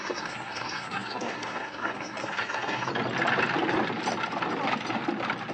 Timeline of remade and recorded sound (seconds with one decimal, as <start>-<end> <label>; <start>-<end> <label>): 0.0-2.9 remade; 2.9-5.5 recorded